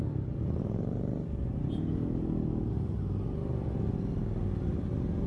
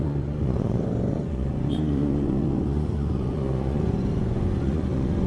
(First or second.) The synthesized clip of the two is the second